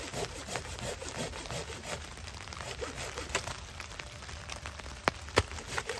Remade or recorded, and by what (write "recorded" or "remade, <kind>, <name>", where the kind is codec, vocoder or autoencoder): recorded